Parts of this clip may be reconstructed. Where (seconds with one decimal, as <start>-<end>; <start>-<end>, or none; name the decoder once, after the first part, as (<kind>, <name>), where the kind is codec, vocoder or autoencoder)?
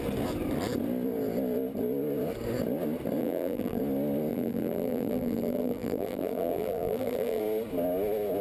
3.2-3.8 (vocoder, BigVGAN v2); 4.3-7.4